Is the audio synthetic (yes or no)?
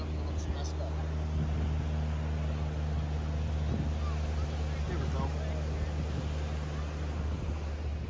no